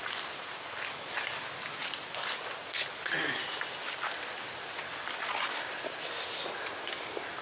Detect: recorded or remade recorded